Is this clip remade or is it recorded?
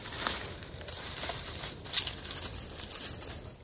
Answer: recorded